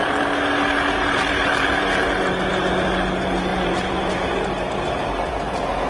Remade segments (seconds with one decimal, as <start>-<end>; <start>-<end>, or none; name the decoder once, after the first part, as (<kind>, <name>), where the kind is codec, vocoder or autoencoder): 1.0-2.5 (vocoder, BigVGAN v2); 3.5-4.1